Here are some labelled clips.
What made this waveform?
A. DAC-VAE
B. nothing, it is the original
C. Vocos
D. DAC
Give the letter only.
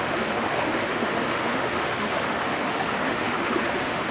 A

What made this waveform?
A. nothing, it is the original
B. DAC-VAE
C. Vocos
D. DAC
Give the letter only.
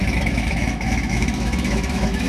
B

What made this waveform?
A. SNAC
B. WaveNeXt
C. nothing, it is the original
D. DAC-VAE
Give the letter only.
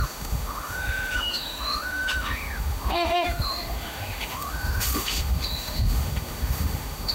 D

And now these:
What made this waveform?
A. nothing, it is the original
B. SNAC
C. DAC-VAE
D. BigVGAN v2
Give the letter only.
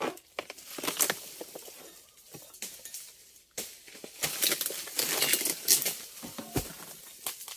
A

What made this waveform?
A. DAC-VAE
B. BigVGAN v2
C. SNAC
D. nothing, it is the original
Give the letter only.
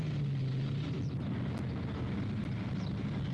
D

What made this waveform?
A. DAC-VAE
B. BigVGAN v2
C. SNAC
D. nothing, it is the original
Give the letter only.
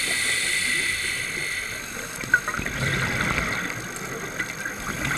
D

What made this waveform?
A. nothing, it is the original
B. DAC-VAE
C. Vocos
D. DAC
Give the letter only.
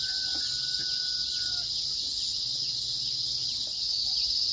A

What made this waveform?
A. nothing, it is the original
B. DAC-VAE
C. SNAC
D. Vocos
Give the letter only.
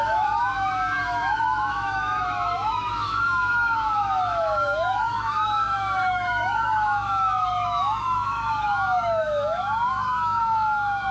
B